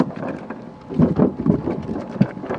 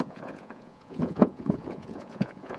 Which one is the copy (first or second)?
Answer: second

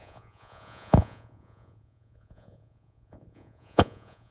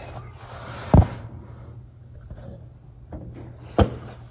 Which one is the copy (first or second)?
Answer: first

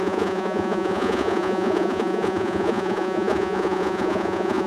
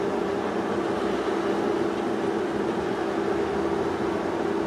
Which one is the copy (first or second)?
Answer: first